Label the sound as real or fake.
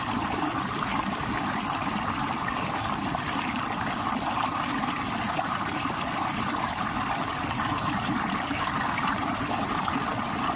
real